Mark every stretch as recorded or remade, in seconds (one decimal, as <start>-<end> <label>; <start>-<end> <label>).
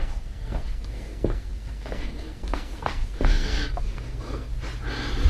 0.0-4.5 remade; 4.5-5.3 recorded